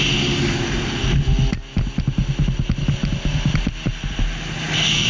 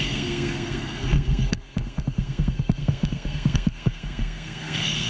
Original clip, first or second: first